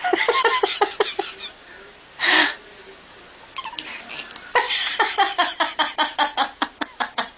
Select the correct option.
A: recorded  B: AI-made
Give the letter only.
A